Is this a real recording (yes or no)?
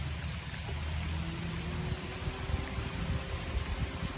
yes